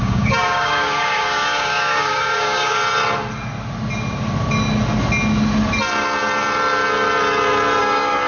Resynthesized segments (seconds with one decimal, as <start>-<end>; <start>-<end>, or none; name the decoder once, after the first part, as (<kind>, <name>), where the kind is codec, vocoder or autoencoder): 0.0-2.8 (codec, DAC); 7.8-8.3